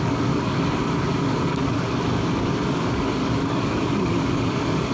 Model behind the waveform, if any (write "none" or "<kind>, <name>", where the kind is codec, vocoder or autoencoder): codec, DAC